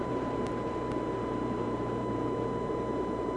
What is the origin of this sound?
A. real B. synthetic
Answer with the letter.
B